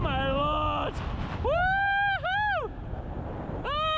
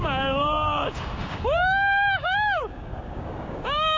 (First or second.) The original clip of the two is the first